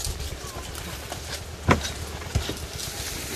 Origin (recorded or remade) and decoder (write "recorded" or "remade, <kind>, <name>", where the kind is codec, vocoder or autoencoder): recorded